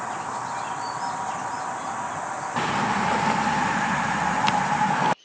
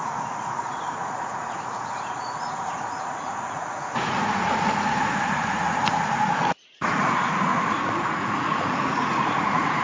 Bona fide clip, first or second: first